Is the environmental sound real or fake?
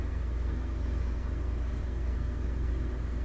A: fake